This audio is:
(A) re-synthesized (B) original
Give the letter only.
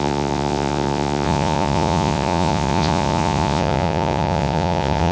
A